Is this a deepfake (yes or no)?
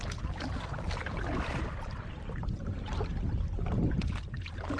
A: no